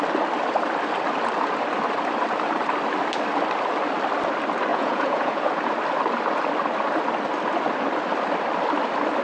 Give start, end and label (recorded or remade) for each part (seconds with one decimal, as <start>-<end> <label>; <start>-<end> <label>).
0.0-4.7 recorded; 4.7-5.5 remade; 5.5-9.2 recorded